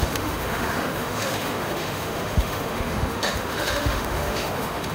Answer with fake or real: fake